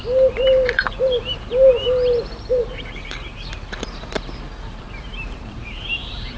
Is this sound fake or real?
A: fake